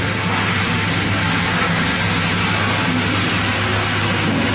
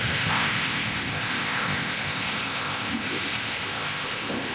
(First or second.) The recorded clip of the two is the first